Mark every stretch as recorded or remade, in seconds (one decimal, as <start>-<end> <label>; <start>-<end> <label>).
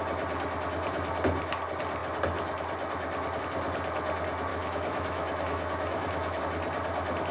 0.0-4.5 recorded; 4.5-6.4 remade; 6.4-7.3 recorded